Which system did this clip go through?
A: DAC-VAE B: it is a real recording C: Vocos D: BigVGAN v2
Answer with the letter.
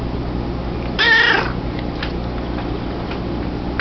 B